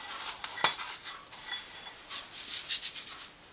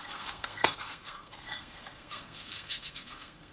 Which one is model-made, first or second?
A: second